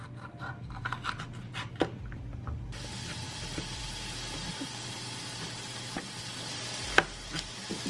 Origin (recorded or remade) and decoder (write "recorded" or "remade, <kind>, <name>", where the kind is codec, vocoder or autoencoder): recorded